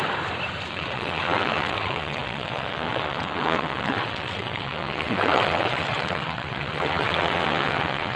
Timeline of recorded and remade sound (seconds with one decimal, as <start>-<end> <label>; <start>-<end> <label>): 0.0-0.7 recorded; 0.7-8.2 remade